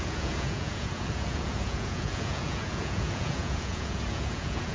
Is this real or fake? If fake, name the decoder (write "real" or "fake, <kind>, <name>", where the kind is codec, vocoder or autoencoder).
fake, vocoder, Vocos